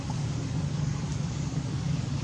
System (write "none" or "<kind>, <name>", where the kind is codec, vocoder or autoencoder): codec, DAC